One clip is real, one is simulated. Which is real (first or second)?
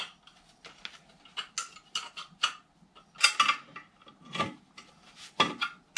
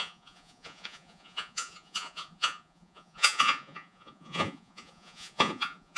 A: first